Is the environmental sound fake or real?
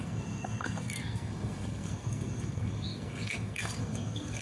fake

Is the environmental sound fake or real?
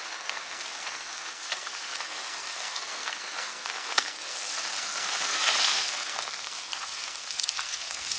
fake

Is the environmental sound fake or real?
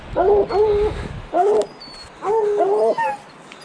real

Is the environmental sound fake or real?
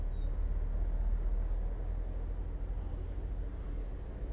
real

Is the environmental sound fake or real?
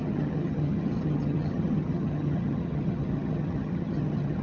fake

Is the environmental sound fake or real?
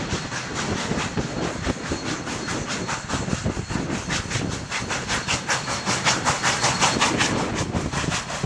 real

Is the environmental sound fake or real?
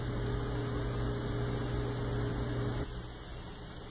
real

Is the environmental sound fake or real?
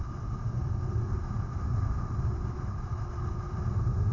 real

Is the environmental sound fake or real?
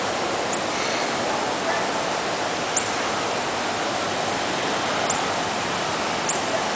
real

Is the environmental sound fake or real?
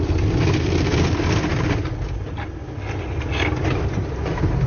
real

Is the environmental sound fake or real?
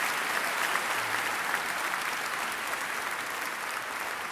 real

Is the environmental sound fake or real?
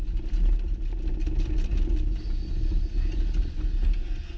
real